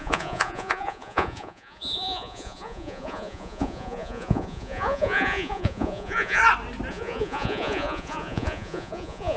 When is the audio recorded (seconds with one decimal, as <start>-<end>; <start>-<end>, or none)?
6.4-6.9

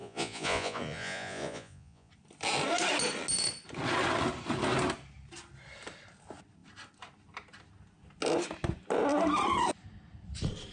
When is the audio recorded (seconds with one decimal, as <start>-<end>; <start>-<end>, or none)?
2.1-10.7

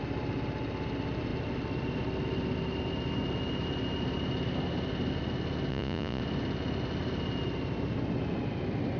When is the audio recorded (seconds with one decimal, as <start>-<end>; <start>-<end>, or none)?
0.0-5.7; 6.2-9.0

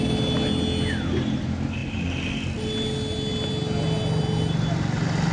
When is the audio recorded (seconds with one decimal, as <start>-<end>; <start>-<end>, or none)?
0.0-5.3

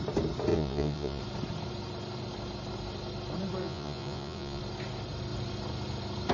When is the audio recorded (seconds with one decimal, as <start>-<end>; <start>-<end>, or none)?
0.0-0.5; 1.2-3.6; 4.6-6.3

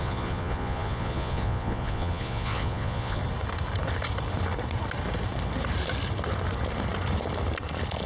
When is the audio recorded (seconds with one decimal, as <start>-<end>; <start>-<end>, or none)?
3.2-8.1

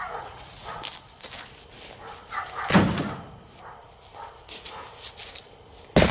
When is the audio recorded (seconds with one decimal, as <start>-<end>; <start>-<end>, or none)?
0.8-4.3; 4.8-6.1

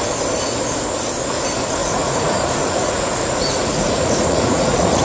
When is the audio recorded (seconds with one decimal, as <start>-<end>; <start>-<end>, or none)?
0.0-1.8